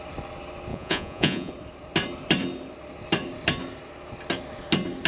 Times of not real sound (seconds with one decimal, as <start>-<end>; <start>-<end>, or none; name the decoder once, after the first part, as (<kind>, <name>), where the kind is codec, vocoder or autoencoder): 0.7-1.5 (vocoder, Vocos)